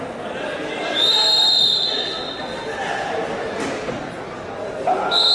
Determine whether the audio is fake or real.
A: real